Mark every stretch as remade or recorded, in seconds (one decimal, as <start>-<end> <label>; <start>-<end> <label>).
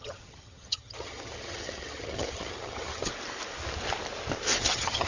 0.0-3.1 remade; 3.1-4.6 recorded; 4.6-5.1 remade